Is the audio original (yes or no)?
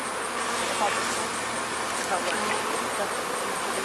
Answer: yes